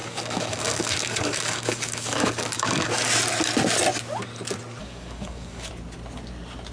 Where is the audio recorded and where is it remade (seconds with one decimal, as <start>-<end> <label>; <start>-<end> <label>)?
0.0-2.9 remade; 2.9-4.8 recorded; 4.8-5.7 remade; 5.7-6.7 recorded